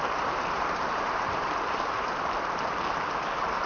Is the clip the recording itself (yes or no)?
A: no